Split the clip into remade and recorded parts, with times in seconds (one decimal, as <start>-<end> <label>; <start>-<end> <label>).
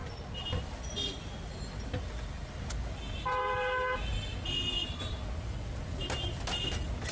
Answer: 0.0-7.1 recorded